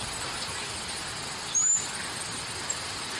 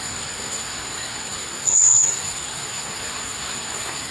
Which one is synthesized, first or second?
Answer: second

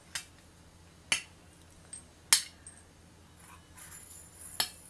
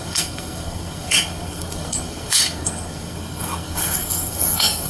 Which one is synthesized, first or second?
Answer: second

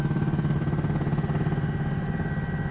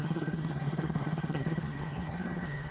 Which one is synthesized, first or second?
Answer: second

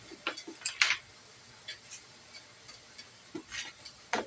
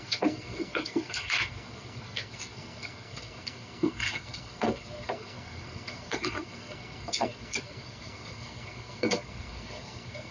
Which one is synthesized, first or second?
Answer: second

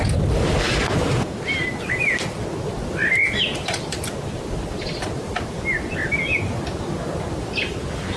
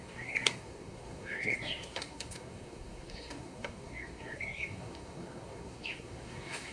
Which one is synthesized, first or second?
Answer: second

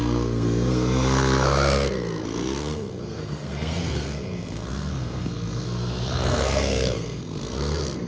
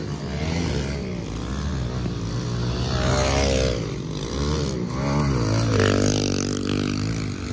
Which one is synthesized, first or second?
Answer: first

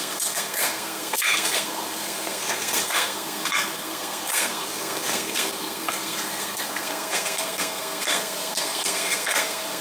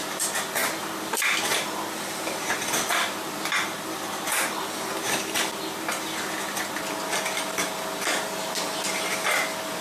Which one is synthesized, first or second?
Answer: first